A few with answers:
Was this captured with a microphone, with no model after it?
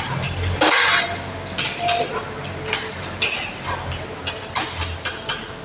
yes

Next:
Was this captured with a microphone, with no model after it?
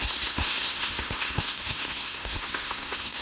no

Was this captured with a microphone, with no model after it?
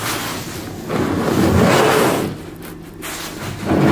yes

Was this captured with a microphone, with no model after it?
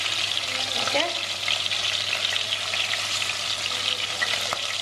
yes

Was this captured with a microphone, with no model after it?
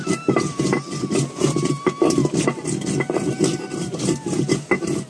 yes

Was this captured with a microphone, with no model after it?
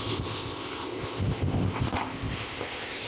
no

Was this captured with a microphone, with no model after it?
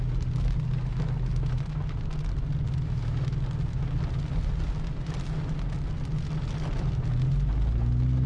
yes